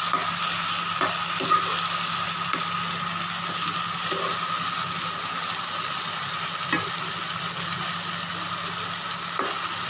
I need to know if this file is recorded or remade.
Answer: recorded